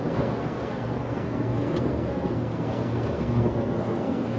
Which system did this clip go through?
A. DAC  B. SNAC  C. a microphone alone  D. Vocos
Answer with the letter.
B